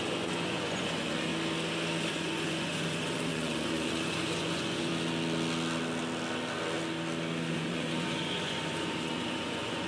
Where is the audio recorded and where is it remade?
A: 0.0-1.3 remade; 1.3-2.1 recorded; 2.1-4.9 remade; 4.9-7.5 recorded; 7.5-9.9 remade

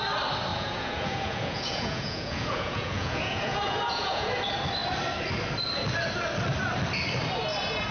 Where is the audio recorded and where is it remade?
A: 0.0-0.5 recorded; 0.5-4.3 remade; 4.3-7.9 recorded

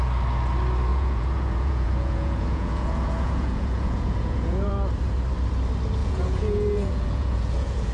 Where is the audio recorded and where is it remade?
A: 0.0-0.9 recorded; 0.9-4.7 remade; 4.7-6.0 recorded; 6.0-7.9 remade

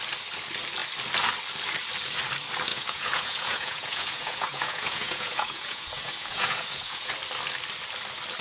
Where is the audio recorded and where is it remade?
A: 0.0-2.7 recorded; 2.7-7.1 remade; 7.1-8.4 recorded

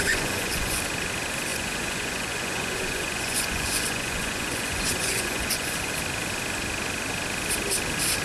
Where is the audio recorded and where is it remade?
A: 0.0-0.8 remade; 0.8-1.5 recorded; 1.5-5.9 remade; 5.9-8.2 recorded

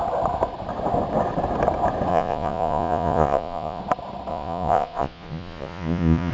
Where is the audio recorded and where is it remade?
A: 0.0-2.1 recorded; 2.1-3.8 remade; 3.8-4.3 recorded; 4.3-6.3 remade

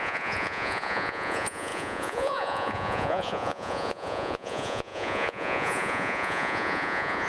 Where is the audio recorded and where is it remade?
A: 0.0-7.3 remade